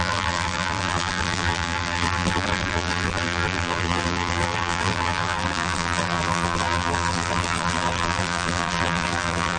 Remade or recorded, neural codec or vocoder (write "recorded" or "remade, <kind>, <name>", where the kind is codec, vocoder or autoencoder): remade, vocoder, BigVGAN v2